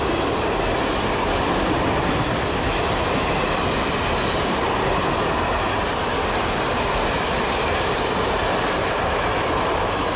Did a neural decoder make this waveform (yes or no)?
no